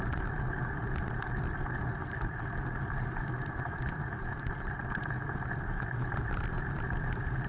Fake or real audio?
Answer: real